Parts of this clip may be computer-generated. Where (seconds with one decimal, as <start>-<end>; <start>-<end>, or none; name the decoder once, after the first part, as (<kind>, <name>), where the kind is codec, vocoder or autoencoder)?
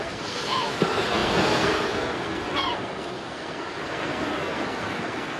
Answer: 0.0-5.4 (codec, SNAC)